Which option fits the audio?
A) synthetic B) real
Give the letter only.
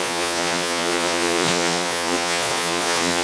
A